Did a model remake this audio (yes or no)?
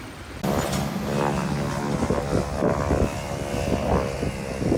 no